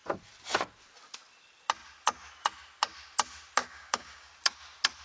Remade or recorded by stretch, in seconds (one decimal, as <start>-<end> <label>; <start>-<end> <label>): 0.0-3.6 recorded; 3.6-4.3 remade; 4.3-5.0 recorded